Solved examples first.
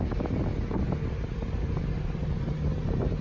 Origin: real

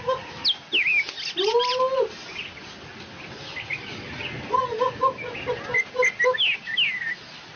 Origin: real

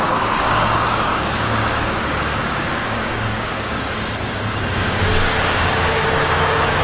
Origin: fake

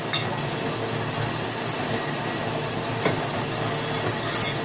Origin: real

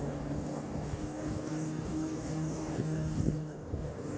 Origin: fake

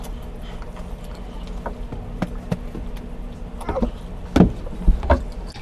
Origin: real